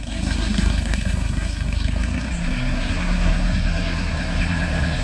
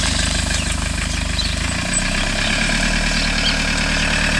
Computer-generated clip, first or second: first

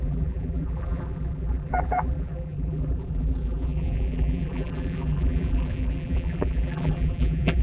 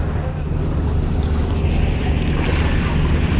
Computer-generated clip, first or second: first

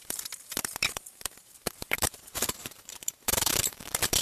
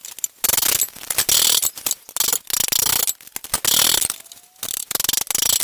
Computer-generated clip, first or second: first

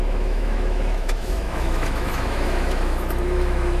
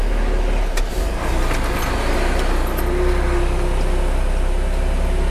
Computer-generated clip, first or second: first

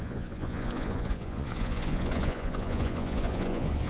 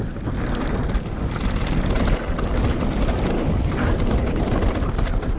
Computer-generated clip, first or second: first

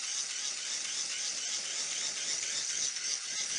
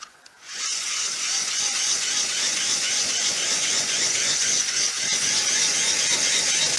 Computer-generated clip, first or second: second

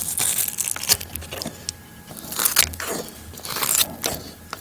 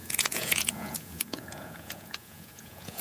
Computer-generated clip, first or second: second